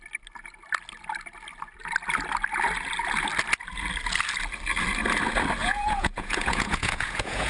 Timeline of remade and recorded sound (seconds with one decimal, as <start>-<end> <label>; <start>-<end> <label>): 0.0-5.6 recorded; 5.6-7.5 remade